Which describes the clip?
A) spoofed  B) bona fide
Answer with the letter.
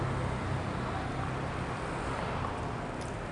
B